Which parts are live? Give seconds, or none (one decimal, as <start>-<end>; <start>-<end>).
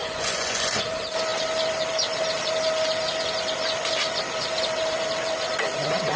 0.8-6.2